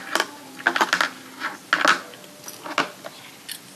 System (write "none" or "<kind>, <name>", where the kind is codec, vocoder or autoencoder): none